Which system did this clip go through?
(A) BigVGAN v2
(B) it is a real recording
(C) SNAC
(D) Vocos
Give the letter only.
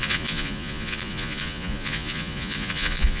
D